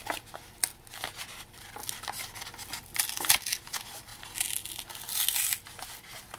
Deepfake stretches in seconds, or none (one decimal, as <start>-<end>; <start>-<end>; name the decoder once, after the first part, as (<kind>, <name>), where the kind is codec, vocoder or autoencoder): none